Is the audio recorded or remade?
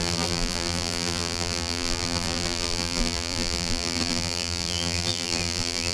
remade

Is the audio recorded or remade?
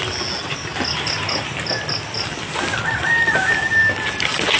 recorded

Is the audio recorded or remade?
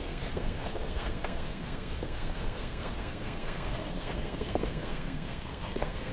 remade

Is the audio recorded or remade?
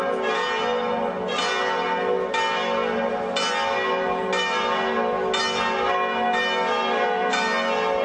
recorded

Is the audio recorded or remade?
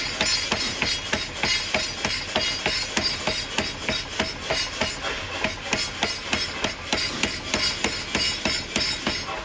recorded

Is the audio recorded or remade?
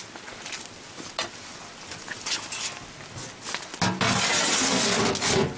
recorded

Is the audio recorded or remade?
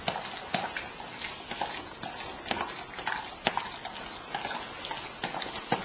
recorded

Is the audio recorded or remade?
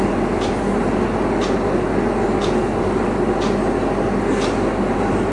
recorded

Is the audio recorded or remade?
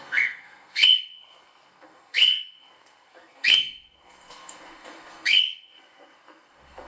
remade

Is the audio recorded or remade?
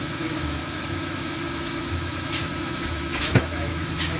remade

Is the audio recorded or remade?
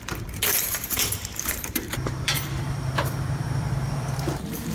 remade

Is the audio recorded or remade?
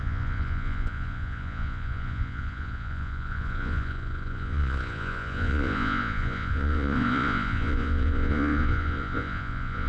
remade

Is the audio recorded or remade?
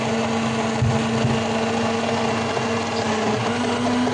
recorded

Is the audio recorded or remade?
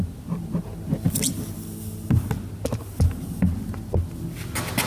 recorded